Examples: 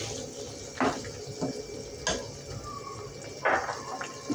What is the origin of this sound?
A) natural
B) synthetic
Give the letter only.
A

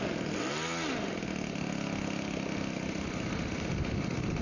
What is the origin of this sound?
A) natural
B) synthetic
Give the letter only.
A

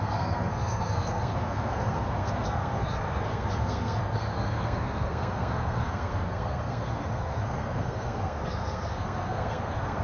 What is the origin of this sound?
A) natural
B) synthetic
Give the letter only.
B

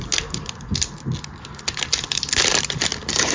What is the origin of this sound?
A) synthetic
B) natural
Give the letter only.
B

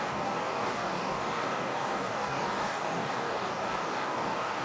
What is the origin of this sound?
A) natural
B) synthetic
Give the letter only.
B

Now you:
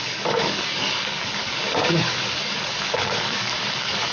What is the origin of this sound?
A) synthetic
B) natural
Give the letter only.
A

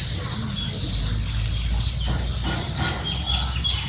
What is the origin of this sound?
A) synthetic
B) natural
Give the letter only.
B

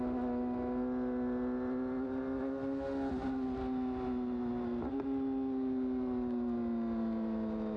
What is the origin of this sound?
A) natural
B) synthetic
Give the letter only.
A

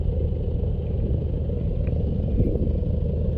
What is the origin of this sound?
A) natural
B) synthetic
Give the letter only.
A